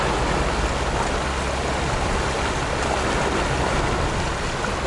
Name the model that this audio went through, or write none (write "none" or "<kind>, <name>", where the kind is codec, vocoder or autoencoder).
none